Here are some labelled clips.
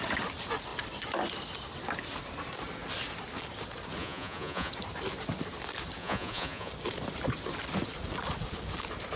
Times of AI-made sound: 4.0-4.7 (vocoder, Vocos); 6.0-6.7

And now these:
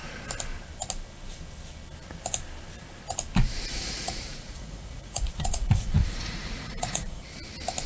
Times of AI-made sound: 3.7-7.2 (vocoder, Vocos)

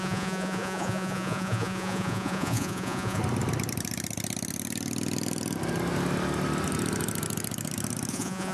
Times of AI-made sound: 0.0-3.2 (vocoder, Vocos); 8.1-8.5

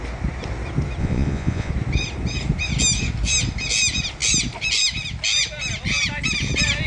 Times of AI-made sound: 1.0-1.7 (vocoder, Vocos)